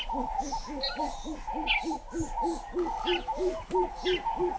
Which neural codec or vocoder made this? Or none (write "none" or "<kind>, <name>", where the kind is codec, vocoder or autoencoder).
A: none